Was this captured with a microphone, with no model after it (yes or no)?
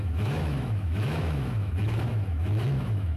no